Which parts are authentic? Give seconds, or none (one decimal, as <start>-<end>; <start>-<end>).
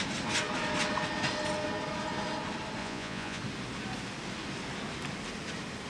0.0-2.8; 3.4-5.9